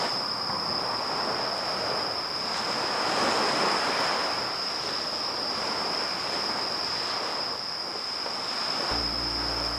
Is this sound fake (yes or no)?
no